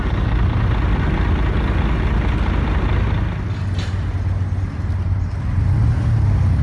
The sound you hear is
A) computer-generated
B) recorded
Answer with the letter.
B